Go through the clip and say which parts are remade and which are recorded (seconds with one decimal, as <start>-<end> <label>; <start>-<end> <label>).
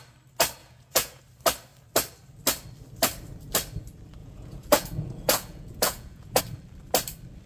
0.0-0.6 recorded; 0.6-1.2 remade; 1.2-4.2 recorded; 4.2-6.4 remade; 6.4-7.5 recorded